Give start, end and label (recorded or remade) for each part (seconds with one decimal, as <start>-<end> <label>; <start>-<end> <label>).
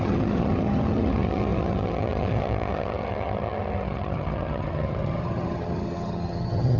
0.0-6.8 remade